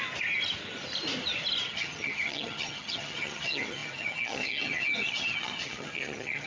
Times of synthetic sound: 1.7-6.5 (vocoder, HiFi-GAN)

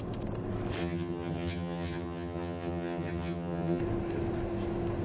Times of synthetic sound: 0.8-3.8 (vocoder, HiFi-GAN)

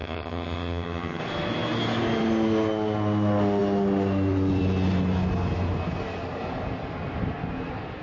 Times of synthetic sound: 0.0-1.2 (vocoder, HiFi-GAN)